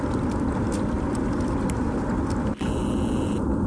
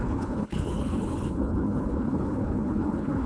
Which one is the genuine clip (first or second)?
first